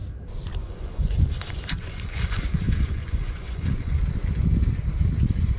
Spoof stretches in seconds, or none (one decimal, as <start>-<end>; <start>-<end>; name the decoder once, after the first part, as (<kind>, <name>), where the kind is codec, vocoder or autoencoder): 0.6-4.0 (vocoder, Vocos)